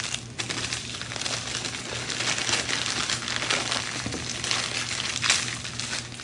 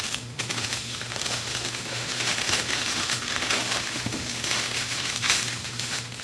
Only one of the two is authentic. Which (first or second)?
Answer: first